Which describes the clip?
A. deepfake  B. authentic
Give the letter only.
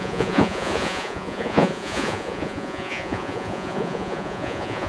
A